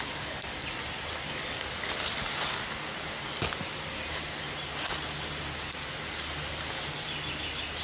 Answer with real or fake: real